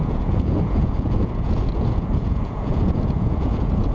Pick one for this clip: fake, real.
fake